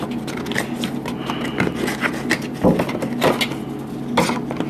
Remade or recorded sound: recorded